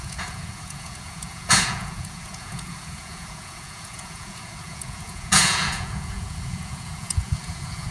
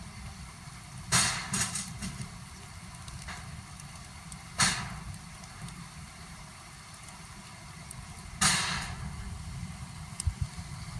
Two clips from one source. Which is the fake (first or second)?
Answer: first